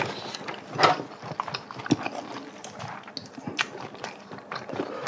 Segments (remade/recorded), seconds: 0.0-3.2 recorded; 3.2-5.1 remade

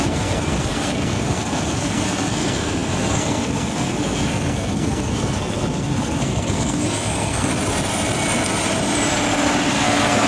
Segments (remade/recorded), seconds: 0.0-7.5 remade; 7.5-9.7 recorded; 9.7-10.3 remade

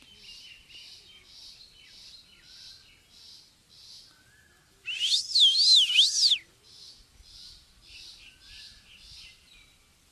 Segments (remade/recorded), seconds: 0.0-10.1 recorded

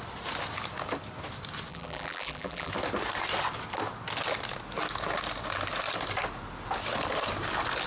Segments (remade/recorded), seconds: 0.0-1.7 recorded; 1.7-2.7 remade; 2.7-7.9 recorded

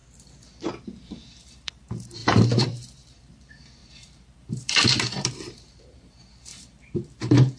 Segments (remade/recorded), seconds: 0.0-1.1 recorded; 1.1-7.6 remade

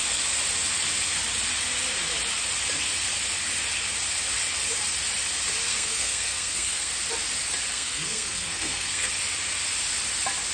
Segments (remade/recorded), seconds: 0.0-5.7 recorded; 5.7-6.9 remade; 6.9-7.7 recorded; 7.7-9.1 remade; 9.1-10.5 recorded

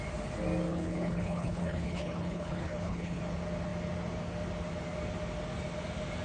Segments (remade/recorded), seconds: 0.0-0.7 recorded; 0.7-3.2 remade; 3.2-6.2 recorded

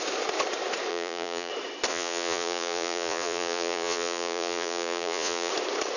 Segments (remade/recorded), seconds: 0.0-0.9 recorded; 0.9-1.5 remade; 1.5-1.9 recorded; 1.9-5.5 remade; 5.5-6.0 recorded